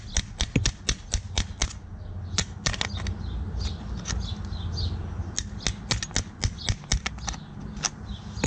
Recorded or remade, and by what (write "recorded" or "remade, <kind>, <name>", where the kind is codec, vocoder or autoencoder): recorded